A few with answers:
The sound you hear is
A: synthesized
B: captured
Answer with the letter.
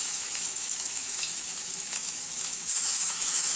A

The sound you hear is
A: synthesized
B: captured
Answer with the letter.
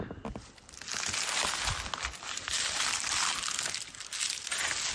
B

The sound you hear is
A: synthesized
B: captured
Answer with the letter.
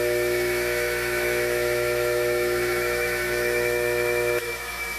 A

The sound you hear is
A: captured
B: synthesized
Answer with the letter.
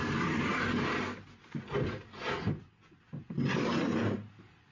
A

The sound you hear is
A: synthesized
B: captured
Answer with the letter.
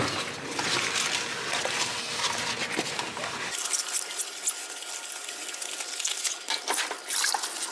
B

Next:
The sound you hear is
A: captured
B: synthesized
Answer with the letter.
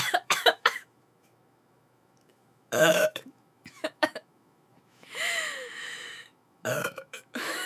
B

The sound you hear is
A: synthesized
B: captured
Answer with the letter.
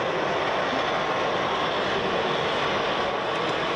B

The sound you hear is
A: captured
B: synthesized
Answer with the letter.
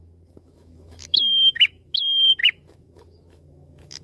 B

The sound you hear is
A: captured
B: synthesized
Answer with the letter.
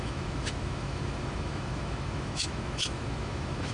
B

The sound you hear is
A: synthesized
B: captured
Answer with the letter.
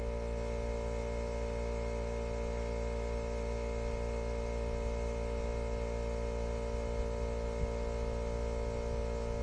B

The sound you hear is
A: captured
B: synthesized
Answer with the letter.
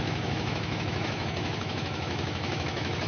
B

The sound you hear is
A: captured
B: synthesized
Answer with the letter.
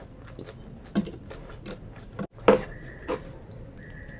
A